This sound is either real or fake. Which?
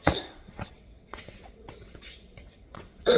fake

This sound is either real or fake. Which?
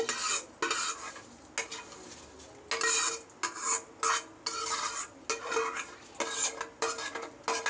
real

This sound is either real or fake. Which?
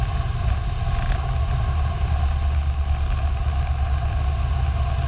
real